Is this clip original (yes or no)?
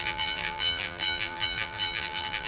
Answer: no